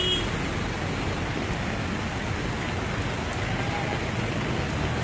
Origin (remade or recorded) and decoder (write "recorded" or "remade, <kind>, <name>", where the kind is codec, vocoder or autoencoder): recorded